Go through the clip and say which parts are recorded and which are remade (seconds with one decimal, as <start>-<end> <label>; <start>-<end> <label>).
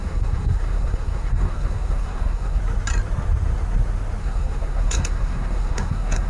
0.0-2.6 remade; 2.6-4.2 recorded; 4.2-6.3 remade